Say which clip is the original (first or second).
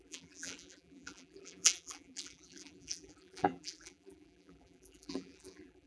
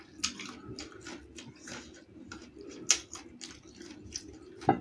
second